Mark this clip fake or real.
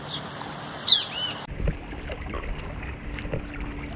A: real